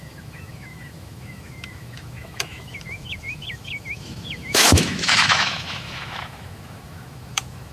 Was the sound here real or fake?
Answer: fake